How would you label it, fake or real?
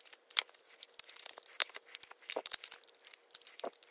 fake